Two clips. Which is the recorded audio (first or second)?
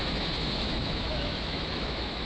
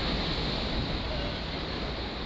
second